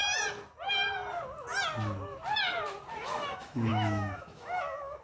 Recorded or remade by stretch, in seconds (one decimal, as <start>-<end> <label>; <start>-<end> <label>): 0.0-3.0 recorded; 3.0-5.0 remade